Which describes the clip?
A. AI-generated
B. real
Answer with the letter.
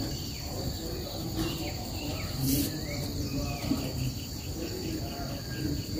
B